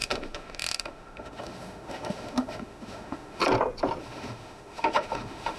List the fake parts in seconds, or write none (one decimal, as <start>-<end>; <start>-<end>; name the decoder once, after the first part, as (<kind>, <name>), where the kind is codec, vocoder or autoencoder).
0.0-3.4 (autoencoder, DAC-VAE); 4.0-5.6